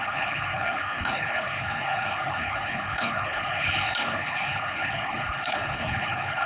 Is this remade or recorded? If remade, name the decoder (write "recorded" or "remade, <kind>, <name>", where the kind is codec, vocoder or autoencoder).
remade, codec, HILCodec